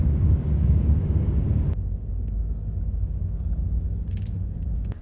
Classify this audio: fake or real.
fake